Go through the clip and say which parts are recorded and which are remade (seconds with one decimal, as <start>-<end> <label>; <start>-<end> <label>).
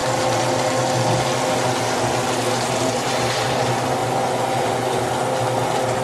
0.0-4.0 recorded; 4.0-5.0 remade; 5.0-6.0 recorded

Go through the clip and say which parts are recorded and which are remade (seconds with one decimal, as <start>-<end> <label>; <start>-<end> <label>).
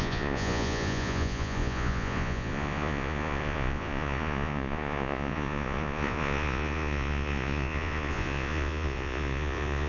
0.0-9.9 remade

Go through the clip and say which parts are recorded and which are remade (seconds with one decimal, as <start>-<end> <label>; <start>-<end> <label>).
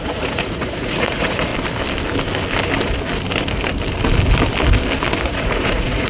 0.0-1.5 remade; 1.5-5.2 recorded; 5.2-6.1 remade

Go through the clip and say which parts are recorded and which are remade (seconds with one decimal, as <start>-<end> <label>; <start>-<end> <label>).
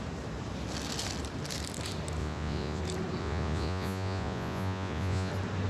0.0-2.2 recorded; 2.2-2.8 remade; 2.8-3.2 recorded; 3.2-5.3 remade; 5.3-5.7 recorded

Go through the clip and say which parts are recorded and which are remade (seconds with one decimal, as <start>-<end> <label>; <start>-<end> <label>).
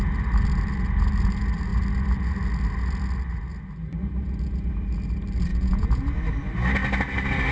0.0-5.5 recorded; 5.5-6.0 remade; 6.0-7.5 recorded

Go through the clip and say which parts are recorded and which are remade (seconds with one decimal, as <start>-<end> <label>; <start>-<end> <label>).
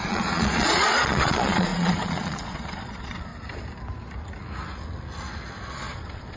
0.0-3.3 remade; 3.3-5.7 recorded; 5.7-6.4 remade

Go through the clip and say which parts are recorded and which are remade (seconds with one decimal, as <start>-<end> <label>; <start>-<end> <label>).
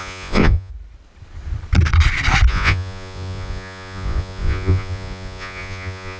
0.0-0.7 remade; 0.7-2.5 recorded; 2.5-6.2 remade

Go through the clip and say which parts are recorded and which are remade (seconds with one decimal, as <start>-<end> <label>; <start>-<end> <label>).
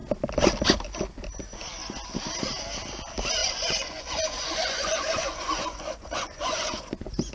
0.0-3.4 recorded; 3.4-7.3 remade